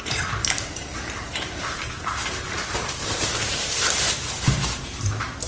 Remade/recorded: remade